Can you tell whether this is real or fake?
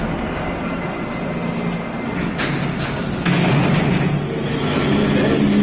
real